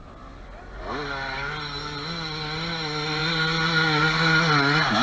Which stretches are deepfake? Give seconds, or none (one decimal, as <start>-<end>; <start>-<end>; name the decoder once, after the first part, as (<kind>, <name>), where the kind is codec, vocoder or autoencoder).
none